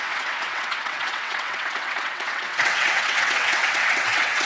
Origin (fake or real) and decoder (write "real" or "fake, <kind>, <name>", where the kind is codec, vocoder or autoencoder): fake, vocoder, WaveNeXt